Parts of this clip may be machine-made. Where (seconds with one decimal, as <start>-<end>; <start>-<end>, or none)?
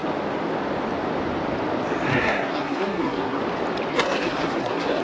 2.1-3.4; 3.9-5.0